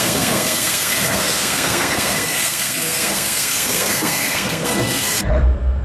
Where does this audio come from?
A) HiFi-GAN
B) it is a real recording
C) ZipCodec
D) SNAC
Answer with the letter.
D